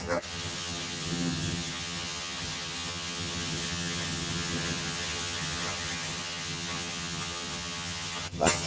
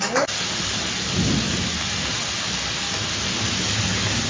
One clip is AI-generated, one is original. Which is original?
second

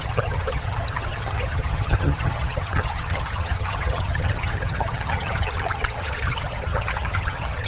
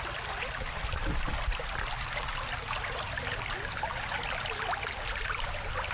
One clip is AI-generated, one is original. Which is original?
second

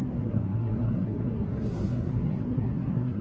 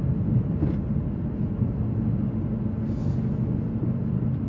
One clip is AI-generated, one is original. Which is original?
second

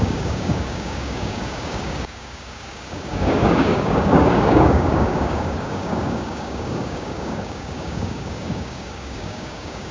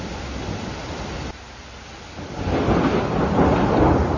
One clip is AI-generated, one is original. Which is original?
second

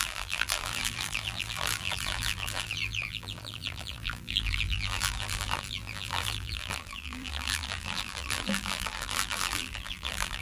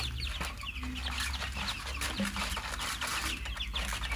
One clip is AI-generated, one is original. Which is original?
second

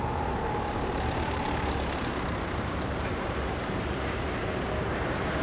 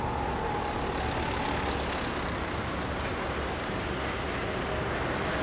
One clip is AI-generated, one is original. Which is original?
second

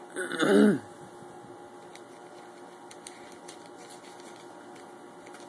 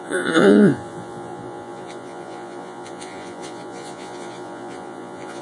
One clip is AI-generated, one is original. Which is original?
first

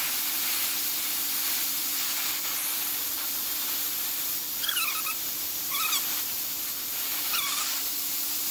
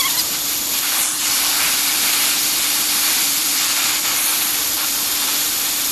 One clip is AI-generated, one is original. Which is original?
first